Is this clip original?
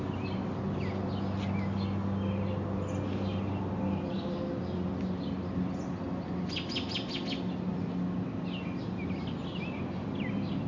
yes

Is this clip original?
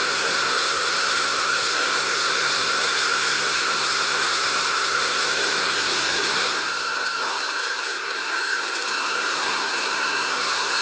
no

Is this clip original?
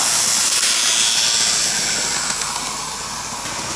yes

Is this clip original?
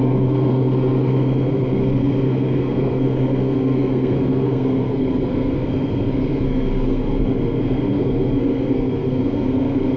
no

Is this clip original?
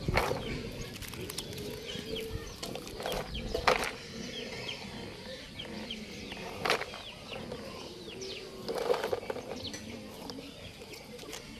yes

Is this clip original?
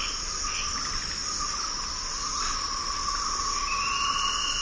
yes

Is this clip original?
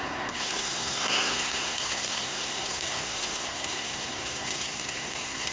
no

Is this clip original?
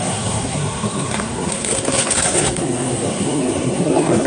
no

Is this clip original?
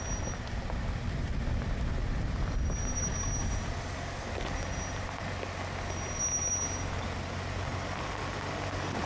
yes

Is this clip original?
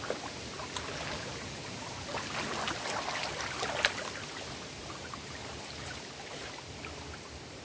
yes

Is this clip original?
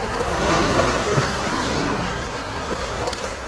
no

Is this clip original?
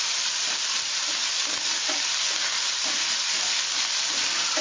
yes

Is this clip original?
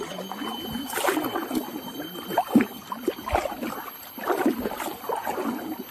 yes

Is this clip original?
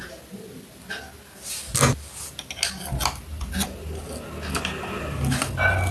yes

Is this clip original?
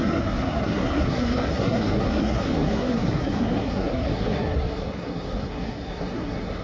no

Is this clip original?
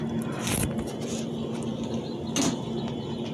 yes